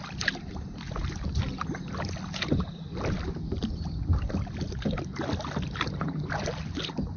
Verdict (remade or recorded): recorded